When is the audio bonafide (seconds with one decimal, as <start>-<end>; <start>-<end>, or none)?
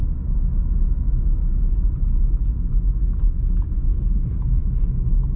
0.0-0.9; 1.4-2.3; 4.6-5.4